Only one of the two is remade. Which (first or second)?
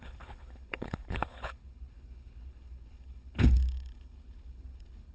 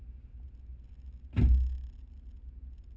first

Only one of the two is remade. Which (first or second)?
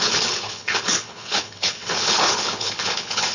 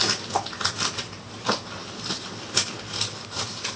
first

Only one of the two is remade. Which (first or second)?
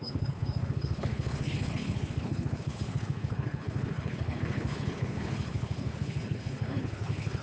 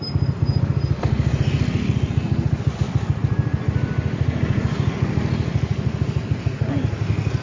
first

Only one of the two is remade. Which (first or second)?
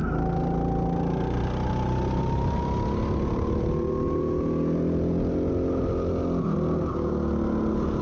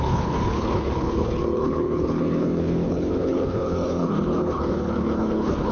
second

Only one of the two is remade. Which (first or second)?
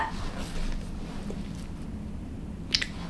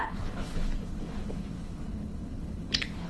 second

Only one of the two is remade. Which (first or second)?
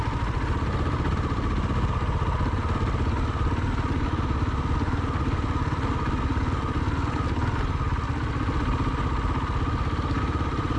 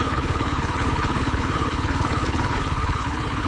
second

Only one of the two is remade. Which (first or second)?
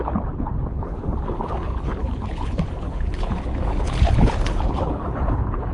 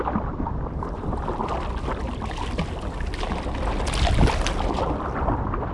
first